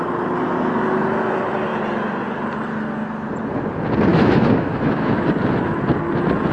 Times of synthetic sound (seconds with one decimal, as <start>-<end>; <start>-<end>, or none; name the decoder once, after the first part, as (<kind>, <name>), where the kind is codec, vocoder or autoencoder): 4.1-5.2 (autoencoder, DAC-VAE)